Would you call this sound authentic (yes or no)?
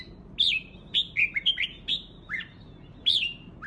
yes